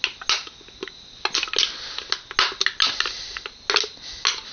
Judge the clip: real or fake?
real